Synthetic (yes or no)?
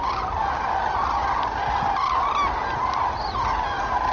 no